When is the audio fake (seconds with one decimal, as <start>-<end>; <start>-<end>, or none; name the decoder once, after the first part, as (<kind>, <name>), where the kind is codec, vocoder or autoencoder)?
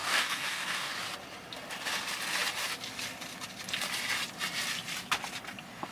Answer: 0.0-0.9 (codec, DAC)